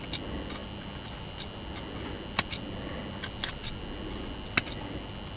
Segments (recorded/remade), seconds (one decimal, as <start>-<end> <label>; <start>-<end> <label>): 0.0-5.4 recorded